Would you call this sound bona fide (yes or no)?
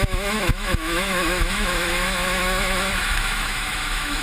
no